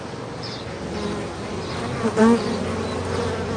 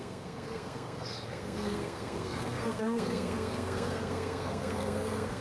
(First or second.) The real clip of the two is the first